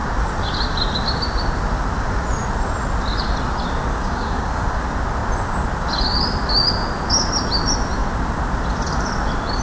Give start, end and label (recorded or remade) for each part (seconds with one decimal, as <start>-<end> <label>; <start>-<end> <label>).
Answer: 0.0-3.9 recorded; 3.9-4.8 remade; 4.8-9.6 recorded